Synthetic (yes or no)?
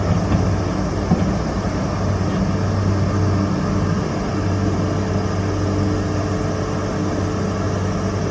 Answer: no